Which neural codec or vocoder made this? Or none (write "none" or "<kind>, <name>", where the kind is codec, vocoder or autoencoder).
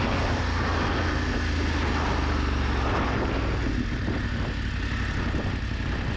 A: none